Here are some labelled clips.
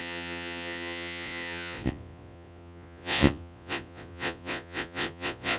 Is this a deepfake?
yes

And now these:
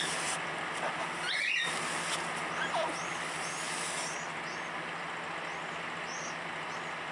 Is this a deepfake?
no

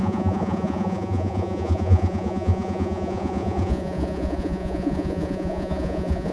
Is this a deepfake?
yes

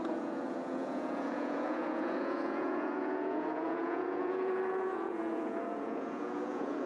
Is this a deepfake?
yes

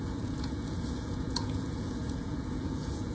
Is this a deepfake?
yes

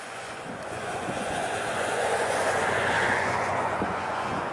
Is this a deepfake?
yes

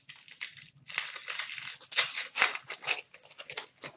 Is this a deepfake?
no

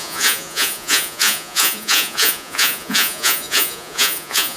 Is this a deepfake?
yes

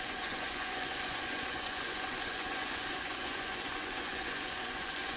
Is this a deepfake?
yes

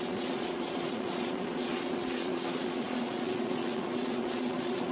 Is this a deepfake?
yes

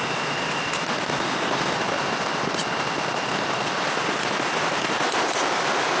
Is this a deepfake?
no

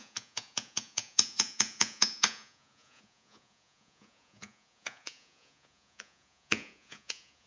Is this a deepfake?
yes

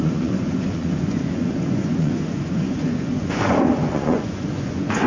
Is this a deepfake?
yes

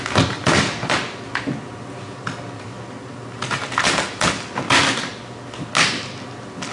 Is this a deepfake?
no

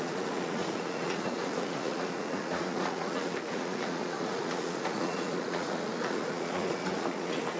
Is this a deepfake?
yes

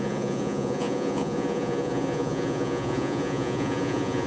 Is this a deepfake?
yes